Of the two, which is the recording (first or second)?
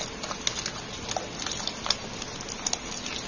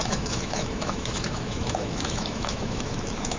first